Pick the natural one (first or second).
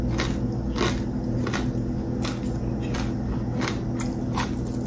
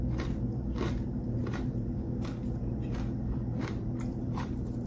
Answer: first